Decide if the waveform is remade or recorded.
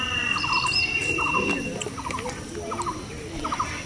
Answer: recorded